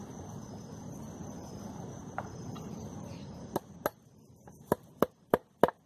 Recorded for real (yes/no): yes